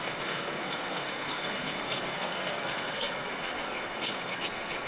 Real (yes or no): no